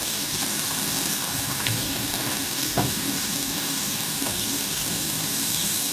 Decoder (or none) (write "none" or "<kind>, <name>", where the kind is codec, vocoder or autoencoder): codec, DAC